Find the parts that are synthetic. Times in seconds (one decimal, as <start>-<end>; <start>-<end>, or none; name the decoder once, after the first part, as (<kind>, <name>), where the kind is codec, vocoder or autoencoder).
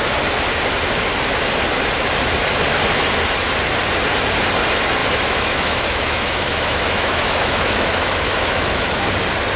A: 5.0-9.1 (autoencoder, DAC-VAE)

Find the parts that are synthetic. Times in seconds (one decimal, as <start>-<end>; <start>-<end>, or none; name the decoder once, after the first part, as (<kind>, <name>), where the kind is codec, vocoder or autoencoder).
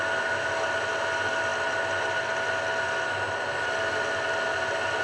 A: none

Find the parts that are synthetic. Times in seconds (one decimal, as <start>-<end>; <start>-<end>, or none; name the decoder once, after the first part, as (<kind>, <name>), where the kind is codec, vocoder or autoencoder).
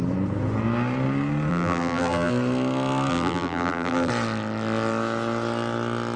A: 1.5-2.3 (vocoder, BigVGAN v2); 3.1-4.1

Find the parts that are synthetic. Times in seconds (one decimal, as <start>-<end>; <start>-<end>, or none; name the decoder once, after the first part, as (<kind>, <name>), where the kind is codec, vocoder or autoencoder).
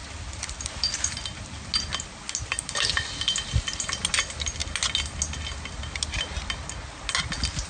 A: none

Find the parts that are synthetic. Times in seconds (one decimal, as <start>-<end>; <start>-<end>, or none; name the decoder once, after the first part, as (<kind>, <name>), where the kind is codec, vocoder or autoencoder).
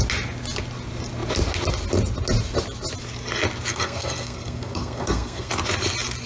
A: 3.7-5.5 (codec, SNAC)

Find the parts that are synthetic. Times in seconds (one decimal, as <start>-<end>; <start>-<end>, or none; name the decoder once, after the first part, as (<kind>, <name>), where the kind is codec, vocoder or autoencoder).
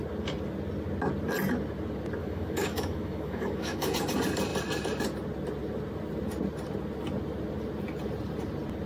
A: 2.2-3.9 (autoencoder, DAC-VAE)